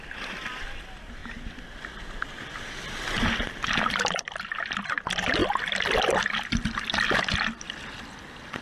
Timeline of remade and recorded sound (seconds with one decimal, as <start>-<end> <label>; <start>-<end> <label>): 0.0-8.6 recorded